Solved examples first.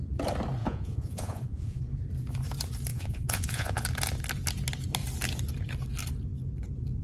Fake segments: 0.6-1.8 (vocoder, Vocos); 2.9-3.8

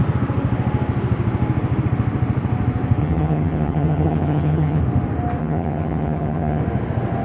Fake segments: 3.0-4.8 (vocoder, HiFi-GAN); 5.4-6.6

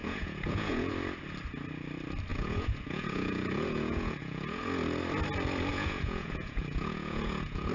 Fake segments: 0.0-0.9 (vocoder, Vocos); 2.3-4.6; 5.7-7.7

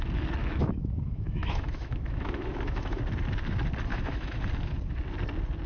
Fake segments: 0.4-3.0 (autoencoder, DAC-VAE); 3.9-4.4